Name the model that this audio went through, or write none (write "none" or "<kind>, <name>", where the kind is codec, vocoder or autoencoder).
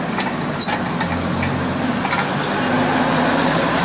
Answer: none